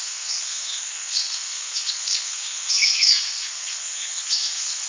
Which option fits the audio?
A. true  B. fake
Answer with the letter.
B